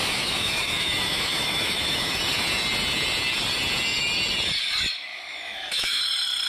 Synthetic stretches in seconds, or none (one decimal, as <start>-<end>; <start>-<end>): 0.0-2.2; 5.1-6.0